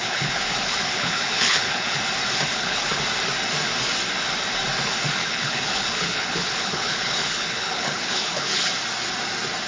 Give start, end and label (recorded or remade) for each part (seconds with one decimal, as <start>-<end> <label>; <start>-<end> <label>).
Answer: 0.0-2.0 remade; 2.0-2.5 recorded; 2.5-3.0 remade; 3.0-5.2 recorded; 5.2-8.7 remade; 8.7-9.7 recorded